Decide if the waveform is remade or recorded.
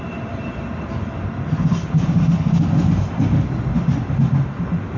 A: recorded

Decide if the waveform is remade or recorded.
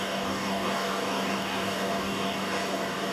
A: remade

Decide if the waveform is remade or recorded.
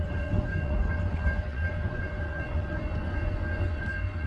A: remade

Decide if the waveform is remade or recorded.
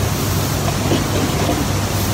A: recorded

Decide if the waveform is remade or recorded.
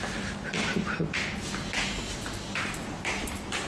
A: recorded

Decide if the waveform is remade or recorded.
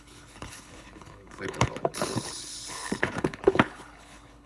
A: remade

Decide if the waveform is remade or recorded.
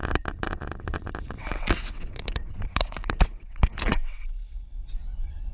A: remade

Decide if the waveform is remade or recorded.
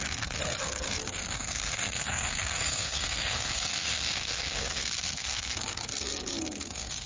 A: remade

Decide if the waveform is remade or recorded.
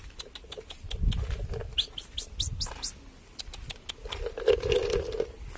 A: recorded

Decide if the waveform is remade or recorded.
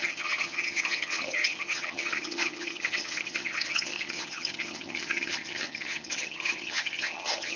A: remade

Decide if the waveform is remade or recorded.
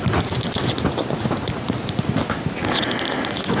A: recorded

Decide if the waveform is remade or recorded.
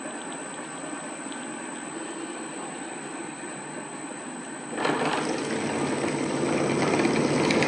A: recorded